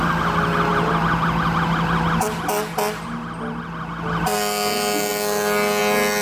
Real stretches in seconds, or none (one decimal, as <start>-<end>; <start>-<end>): 0.0-6.2